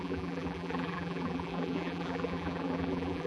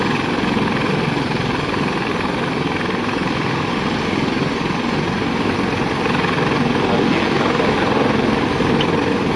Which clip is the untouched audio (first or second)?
second